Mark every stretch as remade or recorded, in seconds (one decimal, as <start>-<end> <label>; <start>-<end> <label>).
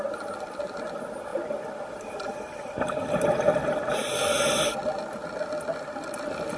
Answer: 0.0-1.3 recorded; 1.3-5.0 remade; 5.0-6.6 recorded